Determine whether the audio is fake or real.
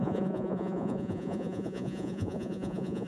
fake